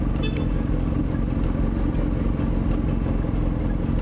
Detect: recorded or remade recorded